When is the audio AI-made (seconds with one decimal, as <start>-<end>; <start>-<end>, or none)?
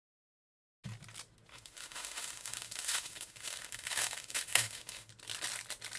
1.5-5.1